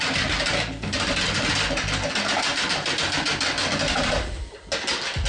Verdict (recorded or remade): recorded